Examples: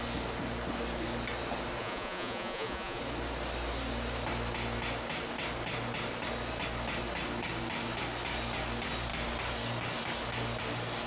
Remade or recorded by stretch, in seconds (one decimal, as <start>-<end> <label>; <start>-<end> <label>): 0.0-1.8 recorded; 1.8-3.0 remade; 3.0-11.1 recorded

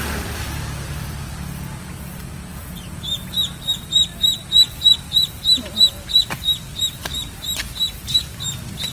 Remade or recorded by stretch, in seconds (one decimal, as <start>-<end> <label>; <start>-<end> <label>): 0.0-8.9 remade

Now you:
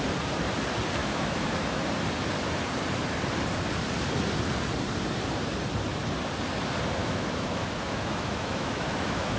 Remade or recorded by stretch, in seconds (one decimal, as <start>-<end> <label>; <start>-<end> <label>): 0.0-1.0 recorded; 1.0-1.8 remade; 1.8-7.0 recorded; 7.0-9.4 remade